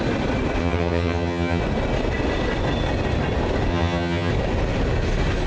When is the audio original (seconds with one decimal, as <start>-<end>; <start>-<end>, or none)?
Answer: 0.0-0.6; 1.6-3.7; 4.3-5.5